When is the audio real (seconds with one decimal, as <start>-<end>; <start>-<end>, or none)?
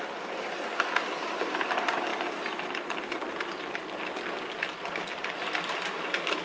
0.0-6.4